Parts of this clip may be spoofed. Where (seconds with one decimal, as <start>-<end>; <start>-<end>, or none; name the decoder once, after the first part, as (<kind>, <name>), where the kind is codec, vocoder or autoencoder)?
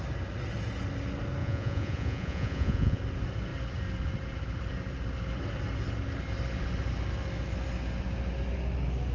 1.4-3.0 (vocoder, Vocos)